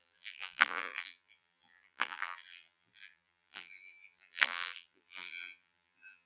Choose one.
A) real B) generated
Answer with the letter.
B